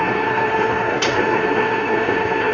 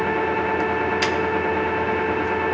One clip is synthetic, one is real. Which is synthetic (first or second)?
first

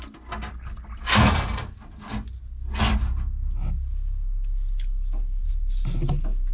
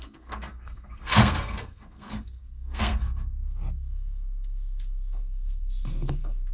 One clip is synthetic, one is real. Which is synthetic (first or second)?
second